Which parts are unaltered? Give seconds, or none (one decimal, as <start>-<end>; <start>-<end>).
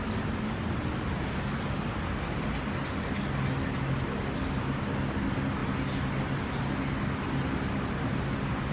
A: 0.0-8.7